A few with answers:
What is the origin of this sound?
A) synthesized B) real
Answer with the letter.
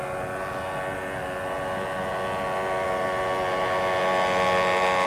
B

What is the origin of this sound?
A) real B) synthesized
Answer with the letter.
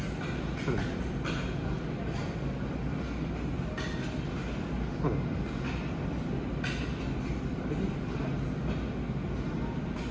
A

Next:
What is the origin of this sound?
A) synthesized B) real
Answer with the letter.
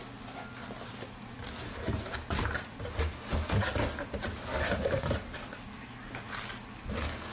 B